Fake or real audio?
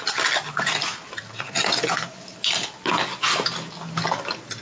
real